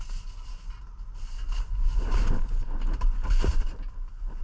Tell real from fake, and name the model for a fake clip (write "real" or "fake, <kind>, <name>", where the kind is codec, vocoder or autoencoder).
real